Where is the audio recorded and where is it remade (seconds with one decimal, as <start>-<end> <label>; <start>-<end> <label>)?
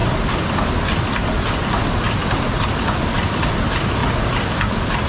0.0-5.1 recorded